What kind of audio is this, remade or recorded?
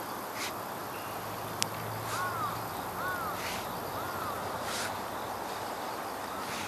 recorded